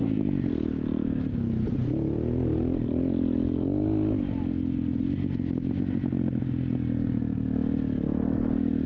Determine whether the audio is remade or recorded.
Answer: recorded